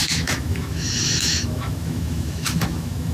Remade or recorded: remade